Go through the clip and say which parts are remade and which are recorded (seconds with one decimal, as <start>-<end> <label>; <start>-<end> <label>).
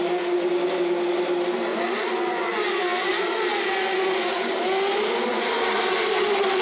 0.0-1.7 recorded; 1.7-2.7 remade; 2.7-3.1 recorded; 3.1-4.5 remade; 4.5-5.3 recorded; 5.3-6.6 remade